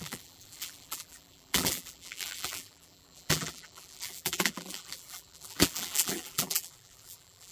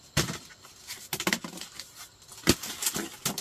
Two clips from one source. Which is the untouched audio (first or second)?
second